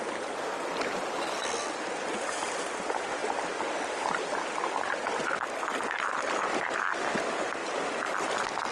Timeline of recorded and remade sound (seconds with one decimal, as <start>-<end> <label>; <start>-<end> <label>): 0.0-8.7 recorded